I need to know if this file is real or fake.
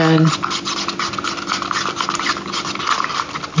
real